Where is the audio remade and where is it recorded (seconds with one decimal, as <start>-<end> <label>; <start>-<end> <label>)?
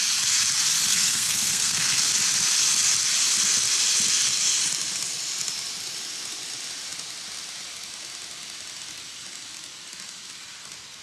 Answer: 0.0-0.9 recorded; 0.9-2.1 remade; 2.1-11.0 recorded